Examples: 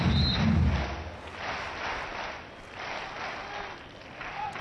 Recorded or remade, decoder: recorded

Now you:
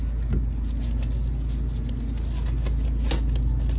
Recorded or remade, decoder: recorded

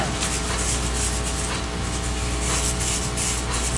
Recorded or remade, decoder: recorded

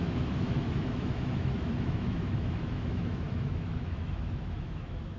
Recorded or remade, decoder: remade, autoencoder, DAC-VAE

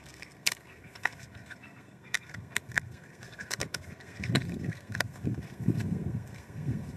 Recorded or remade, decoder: remade, codec, SNAC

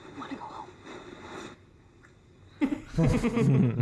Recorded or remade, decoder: recorded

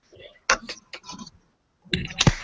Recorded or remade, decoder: recorded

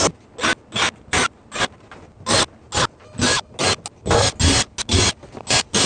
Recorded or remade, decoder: recorded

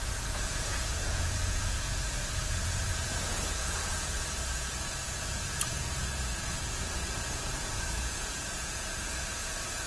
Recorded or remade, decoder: remade, vocoder, Vocos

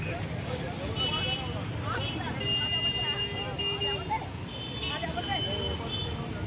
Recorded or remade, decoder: recorded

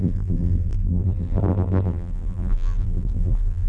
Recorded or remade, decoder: remade, vocoder, BigVGAN v2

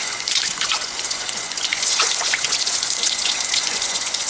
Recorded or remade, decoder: remade, vocoder, Vocos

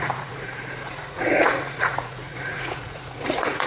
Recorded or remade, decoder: remade, vocoder, Vocos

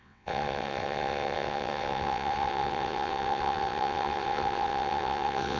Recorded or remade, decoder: remade, vocoder, WaveNeXt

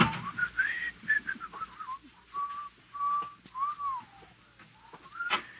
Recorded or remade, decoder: recorded